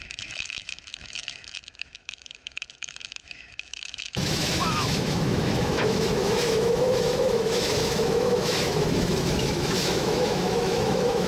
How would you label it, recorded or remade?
remade